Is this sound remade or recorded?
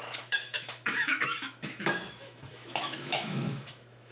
remade